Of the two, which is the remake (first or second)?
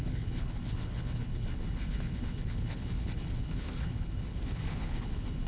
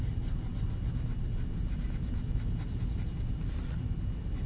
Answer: first